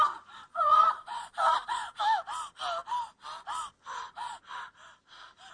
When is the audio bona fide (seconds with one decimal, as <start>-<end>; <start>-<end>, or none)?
0.0-0.5; 2.0-5.5